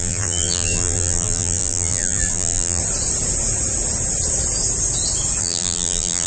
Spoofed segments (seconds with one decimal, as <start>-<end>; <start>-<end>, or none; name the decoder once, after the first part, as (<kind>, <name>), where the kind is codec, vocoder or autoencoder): 0.0-2.8 (vocoder, BigVGAN v2); 5.4-6.3